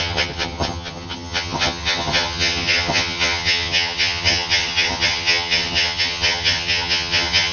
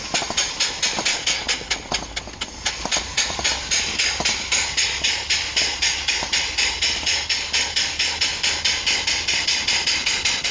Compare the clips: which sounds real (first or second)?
second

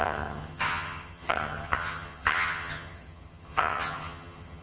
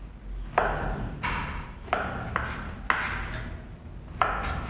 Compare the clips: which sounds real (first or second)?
second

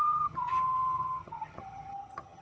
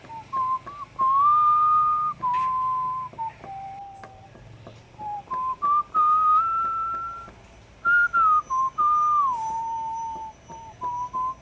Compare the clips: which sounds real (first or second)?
second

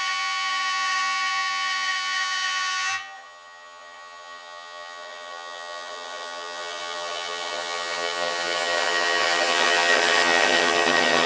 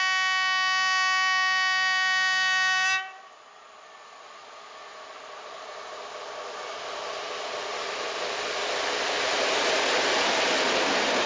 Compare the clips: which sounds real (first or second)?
second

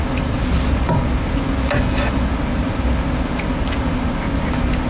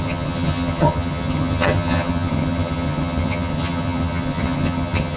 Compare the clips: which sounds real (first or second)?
first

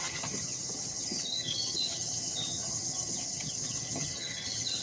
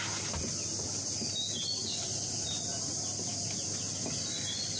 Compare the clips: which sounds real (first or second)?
second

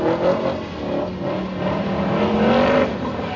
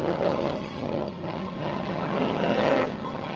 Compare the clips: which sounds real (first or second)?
first